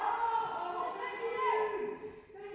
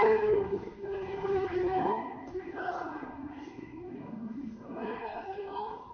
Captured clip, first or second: first